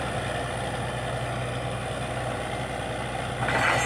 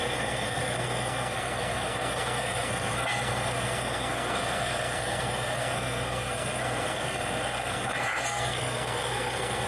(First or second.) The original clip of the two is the first